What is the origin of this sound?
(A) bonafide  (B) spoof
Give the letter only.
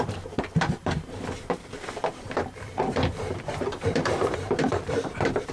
B